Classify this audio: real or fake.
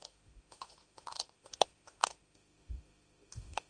fake